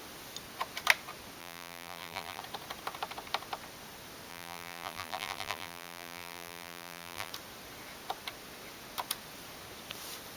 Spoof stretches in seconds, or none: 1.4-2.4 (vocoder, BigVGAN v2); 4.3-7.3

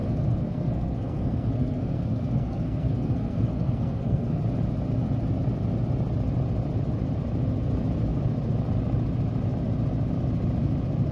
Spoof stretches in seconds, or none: 0.0-4.4 (codec, SNAC)

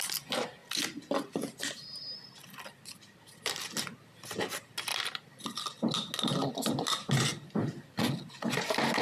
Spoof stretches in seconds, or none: 0.6-3.2 (vocoder, BigVGAN v2); 4.9-5.8; 7.3-8.2

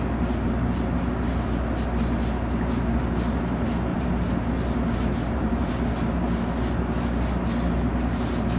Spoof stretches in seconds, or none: 3.9-5.7 (vocoder, BigVGAN v2)

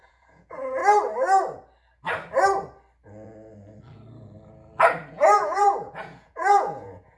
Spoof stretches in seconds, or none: 0.0-0.8 (vocoder, Vocos); 5.1-7.2

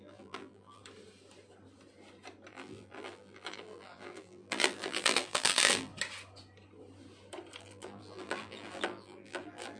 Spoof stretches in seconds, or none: 0.0-0.8 (vocoder, BigVGAN v2); 2.5-5.9; 7.6-9.8

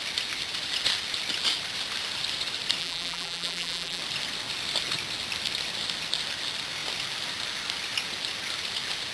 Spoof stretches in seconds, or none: 2.8-4.0 (vocoder, BigVGAN v2)

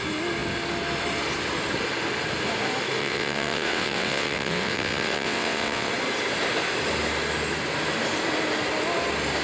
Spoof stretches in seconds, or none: 3.0-5.9 (vocoder, WaveNeXt)